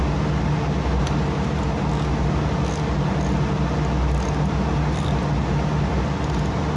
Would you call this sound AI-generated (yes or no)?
no